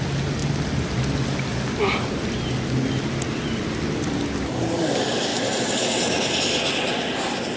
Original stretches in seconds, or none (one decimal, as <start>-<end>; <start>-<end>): 0.0-7.6